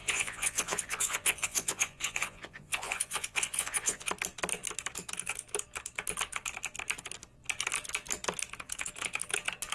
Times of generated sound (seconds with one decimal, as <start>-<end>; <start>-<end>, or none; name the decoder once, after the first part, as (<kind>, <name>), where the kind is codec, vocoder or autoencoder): 0.0-4.1 (vocoder, Vocos)